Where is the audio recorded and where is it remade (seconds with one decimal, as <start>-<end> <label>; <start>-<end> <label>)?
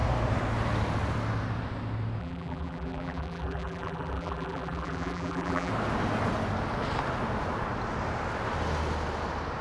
0.0-2.2 recorded; 2.2-5.7 remade; 5.7-9.6 recorded